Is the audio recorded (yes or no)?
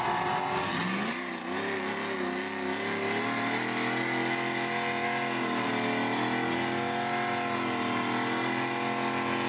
yes